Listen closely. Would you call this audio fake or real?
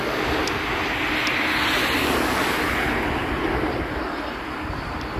real